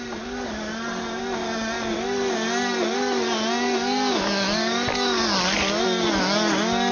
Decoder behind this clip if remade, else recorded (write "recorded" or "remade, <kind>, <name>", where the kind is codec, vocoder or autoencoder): recorded